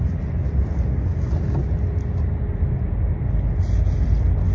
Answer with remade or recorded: recorded